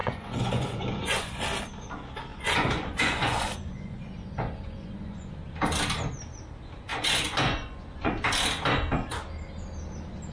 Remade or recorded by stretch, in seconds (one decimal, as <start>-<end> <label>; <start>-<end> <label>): 0.0-1.4 remade; 1.4-2.3 recorded; 2.3-5.3 remade; 5.3-6.9 recorded; 6.9-8.1 remade; 8.1-10.3 recorded